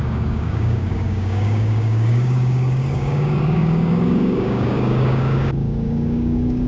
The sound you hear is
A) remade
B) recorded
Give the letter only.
A